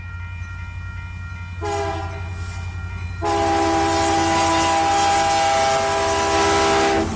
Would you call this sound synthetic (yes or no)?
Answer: no